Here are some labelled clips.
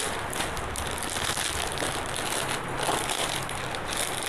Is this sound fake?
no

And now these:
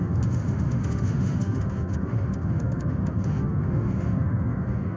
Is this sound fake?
yes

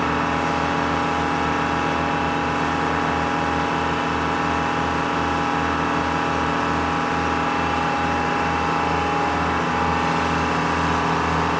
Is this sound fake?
no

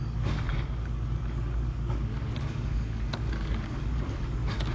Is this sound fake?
yes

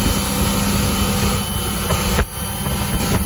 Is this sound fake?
no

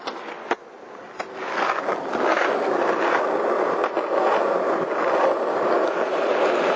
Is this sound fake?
no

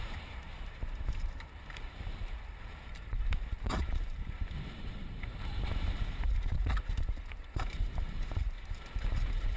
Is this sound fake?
yes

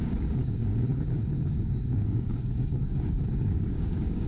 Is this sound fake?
yes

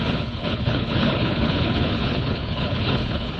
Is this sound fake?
yes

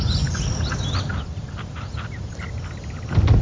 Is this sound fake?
no